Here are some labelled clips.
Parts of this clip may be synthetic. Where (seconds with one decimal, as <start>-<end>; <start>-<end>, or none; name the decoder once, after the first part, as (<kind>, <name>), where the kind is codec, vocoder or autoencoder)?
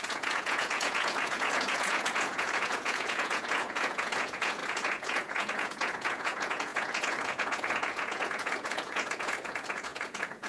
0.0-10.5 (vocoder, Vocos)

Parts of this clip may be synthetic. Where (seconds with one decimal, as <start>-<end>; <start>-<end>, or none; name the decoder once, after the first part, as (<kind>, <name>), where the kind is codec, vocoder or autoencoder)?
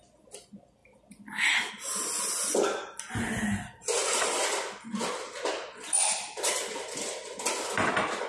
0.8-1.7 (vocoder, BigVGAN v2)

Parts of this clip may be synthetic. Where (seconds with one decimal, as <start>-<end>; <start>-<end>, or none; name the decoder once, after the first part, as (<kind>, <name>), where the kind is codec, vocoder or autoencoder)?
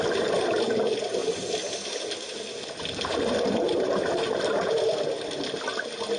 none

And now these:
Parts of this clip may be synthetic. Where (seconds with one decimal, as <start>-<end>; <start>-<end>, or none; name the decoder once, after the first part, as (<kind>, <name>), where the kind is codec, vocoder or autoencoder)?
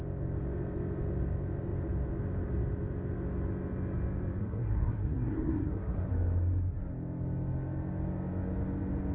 4.4-6.1 (codec, SNAC)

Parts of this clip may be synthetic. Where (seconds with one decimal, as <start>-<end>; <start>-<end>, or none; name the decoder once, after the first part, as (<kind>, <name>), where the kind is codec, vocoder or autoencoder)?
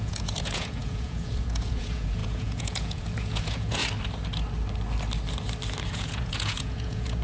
0.0-3.8 (vocoder, Vocos); 5.9-7.2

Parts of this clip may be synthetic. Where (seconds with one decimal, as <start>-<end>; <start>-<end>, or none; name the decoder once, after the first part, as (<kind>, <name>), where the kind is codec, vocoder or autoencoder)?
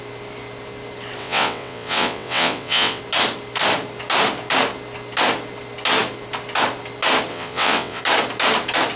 1.2-3.0 (vocoder, WaveNeXt); 7.3-8.0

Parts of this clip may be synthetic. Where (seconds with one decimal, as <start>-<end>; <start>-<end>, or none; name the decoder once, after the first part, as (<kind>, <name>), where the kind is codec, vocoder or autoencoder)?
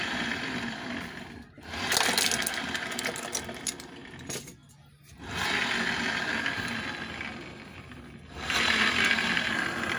none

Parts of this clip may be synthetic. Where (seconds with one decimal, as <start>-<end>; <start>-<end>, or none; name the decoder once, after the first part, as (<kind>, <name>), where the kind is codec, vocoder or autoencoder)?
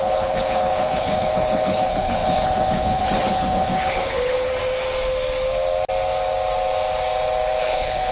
0.0-4.5 (codec, HILCodec); 7.6-8.1